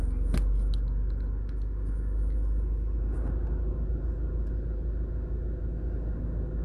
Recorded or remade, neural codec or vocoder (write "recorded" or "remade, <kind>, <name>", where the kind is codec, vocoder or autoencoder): recorded